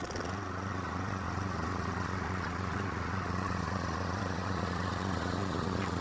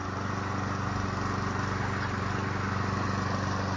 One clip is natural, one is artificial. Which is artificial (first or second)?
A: first